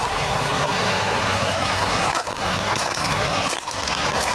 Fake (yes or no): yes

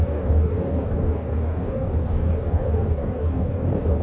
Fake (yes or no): yes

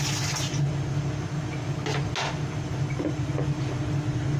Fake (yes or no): no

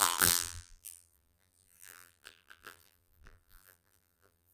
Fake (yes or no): yes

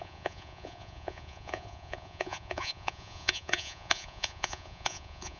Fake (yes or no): yes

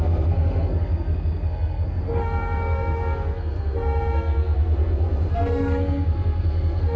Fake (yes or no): yes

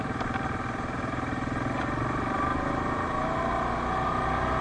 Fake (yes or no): no